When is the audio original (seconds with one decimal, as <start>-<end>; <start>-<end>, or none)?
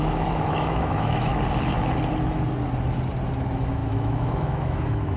1.3-3.4